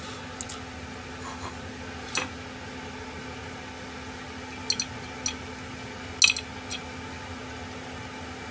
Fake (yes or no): no